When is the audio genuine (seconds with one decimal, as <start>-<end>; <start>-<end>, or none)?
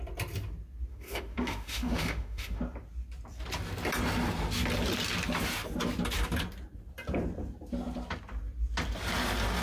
0.0-0.9; 2.6-9.6